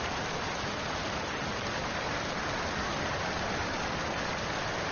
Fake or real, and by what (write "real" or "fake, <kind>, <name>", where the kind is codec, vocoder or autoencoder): real